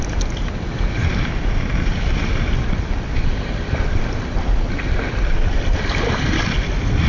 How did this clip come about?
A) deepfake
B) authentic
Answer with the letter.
B